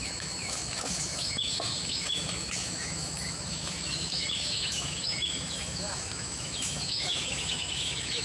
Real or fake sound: fake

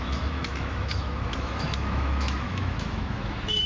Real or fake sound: fake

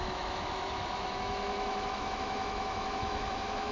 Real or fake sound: fake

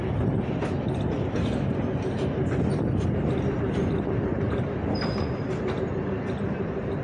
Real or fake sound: real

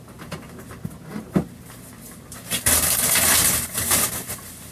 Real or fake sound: real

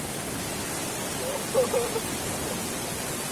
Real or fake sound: real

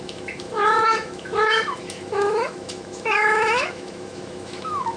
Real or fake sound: fake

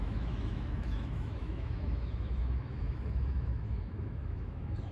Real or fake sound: fake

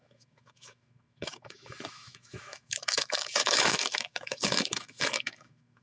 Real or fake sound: fake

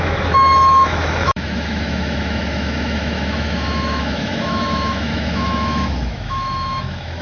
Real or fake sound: fake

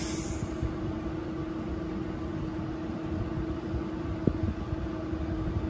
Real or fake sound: real